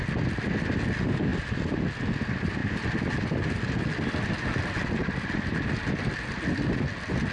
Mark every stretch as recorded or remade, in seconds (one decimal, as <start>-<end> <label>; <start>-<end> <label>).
0.0-7.3 recorded